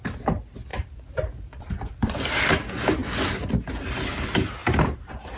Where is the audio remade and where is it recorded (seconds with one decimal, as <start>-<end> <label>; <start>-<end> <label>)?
0.0-0.7 recorded; 0.7-2.4 remade; 2.4-4.6 recorded; 4.6-5.4 remade